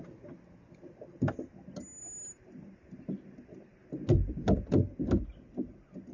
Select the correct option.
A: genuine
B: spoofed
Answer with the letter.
A